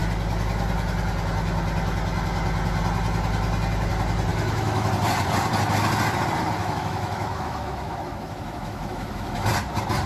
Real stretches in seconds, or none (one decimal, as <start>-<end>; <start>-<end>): 0.0-4.3; 4.9-6.6; 9.5-10.1